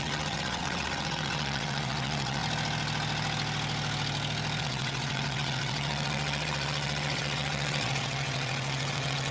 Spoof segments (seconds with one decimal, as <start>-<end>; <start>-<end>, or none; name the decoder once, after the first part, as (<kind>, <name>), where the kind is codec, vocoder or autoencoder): 0.0-2.4 (vocoder, WaveNeXt); 4.6-9.3